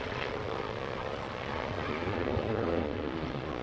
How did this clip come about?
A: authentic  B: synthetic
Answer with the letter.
B